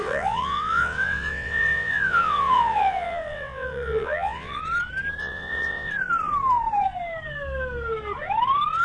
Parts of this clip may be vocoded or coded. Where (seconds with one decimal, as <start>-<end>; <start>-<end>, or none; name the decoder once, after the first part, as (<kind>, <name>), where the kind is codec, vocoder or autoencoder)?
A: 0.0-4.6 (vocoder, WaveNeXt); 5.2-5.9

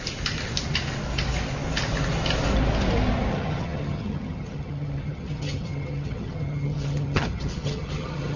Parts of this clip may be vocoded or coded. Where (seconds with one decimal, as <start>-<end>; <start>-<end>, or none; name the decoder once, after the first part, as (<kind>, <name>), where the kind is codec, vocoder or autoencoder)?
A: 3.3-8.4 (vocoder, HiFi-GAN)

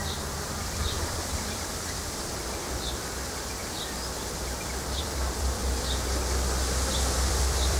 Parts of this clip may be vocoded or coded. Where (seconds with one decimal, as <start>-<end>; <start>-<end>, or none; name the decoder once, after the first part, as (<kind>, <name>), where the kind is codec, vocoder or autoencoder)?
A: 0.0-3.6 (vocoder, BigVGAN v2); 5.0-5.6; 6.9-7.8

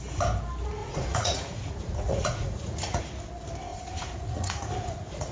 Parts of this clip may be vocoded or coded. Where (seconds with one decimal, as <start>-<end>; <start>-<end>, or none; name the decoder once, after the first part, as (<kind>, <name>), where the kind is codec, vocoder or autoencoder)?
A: 0.8-3.0 (vocoder, Vocos); 3.7-5.3

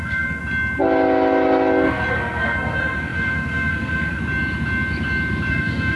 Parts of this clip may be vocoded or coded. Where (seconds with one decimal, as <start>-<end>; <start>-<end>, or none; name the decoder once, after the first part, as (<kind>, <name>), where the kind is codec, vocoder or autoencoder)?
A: 0.0-0.4 (codec, SNAC); 2.1-4.2; 5.5-6.0

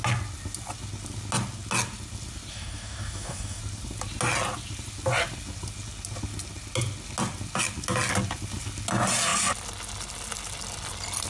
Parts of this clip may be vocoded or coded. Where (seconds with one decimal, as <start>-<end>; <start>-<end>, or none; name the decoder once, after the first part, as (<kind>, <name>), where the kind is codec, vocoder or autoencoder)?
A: 2.5-3.6 (codec, DAC)

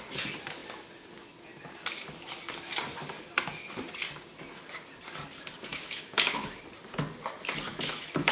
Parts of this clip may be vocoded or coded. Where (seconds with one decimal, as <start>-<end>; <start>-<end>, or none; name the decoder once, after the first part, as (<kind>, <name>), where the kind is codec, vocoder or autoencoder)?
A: 5.7-6.6 (autoencoder, DAC-VAE); 7.7-8.3